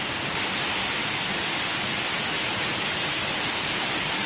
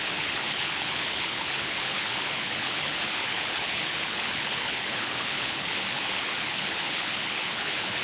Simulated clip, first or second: second